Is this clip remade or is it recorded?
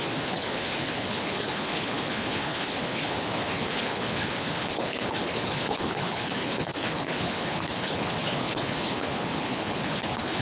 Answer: remade